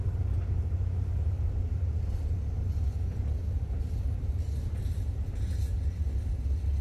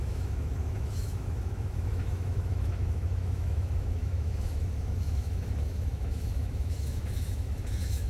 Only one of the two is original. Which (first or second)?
first